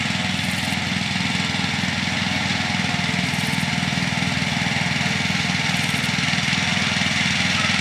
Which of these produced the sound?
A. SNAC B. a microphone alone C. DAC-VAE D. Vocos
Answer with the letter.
B